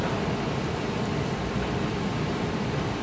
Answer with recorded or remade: recorded